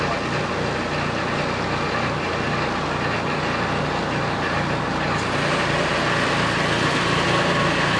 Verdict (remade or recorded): recorded